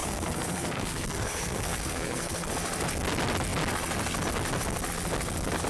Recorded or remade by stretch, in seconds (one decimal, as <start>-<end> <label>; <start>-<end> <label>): 0.0-2.5 remade; 2.5-5.7 recorded